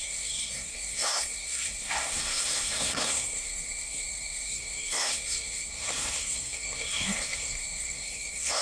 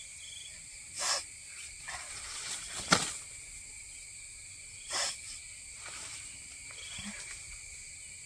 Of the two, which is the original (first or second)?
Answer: second